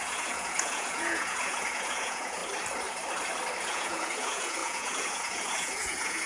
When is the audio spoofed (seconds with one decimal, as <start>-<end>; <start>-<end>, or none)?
0.0-2.4; 3.6-6.3